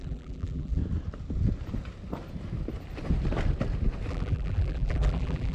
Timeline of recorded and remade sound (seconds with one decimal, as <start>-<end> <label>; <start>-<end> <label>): 0.0-0.8 remade; 0.8-4.1 recorded; 4.1-5.5 remade